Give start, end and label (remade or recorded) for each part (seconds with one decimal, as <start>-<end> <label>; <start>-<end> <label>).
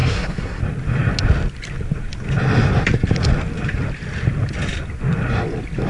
0.0-0.6 remade; 0.6-5.9 recorded